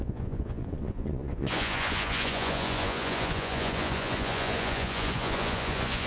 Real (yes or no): no